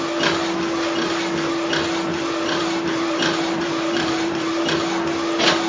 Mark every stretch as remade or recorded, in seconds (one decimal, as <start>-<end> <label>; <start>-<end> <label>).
0.0-2.1 recorded; 2.1-4.6 remade; 4.6-5.7 recorded